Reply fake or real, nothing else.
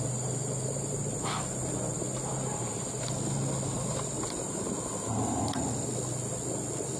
real